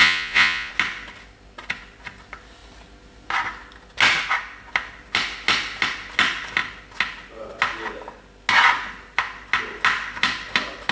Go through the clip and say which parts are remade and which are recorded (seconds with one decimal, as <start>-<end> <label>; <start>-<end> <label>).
0.0-0.7 remade; 0.7-10.9 recorded